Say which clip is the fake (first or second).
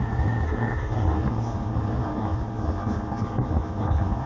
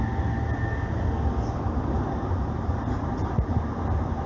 first